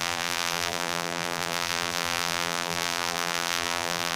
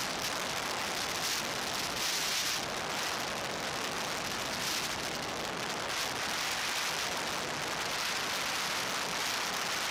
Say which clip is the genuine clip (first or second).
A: second